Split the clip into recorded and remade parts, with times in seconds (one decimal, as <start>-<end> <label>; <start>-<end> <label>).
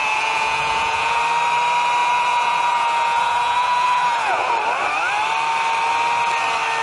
0.0-1.2 remade; 1.2-2.0 recorded; 2.0-4.5 remade; 4.5-6.8 recorded